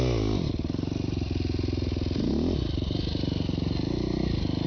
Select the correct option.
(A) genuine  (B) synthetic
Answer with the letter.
A